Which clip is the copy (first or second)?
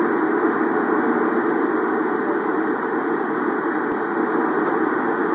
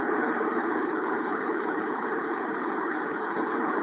second